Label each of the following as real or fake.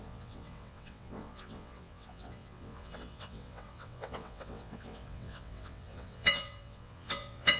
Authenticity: fake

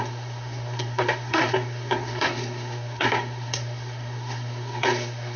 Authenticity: fake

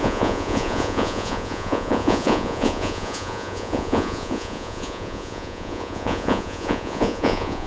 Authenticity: fake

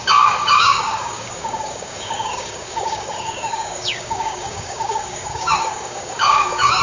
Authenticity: fake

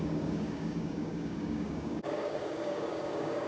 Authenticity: fake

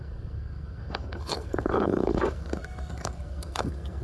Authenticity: fake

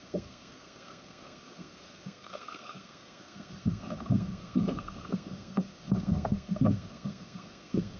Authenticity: fake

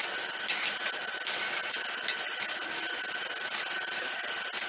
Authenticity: real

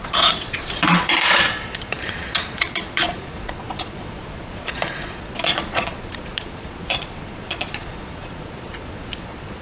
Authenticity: fake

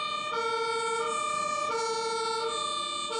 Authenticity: real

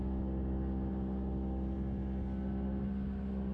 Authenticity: real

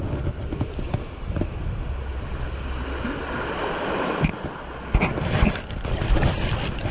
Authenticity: real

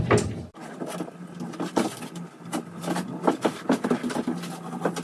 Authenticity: real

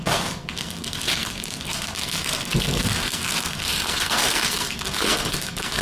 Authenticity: fake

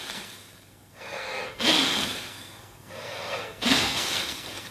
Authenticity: fake